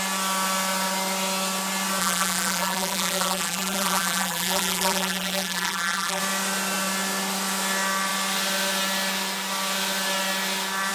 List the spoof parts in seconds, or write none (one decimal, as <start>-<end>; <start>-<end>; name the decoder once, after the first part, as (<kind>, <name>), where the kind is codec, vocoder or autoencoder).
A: 2.0-6.2 (vocoder, BigVGAN v2)